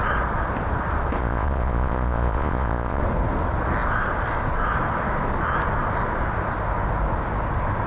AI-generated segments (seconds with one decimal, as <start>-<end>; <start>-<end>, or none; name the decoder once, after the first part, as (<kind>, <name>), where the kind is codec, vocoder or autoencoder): 1.2-3.0 (vocoder, Vocos)